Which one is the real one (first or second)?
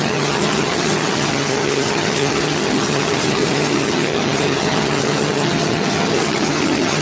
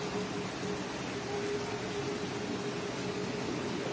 second